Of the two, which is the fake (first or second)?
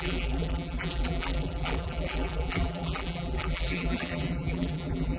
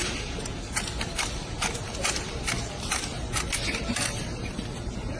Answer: first